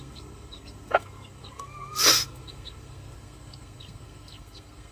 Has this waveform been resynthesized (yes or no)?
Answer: yes